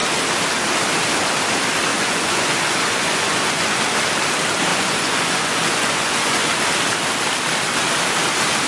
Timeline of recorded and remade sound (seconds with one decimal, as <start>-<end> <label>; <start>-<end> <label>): 0.0-1.9 recorded; 1.9-3.8 remade; 3.8-4.7 recorded; 4.7-6.5 remade; 6.5-8.7 recorded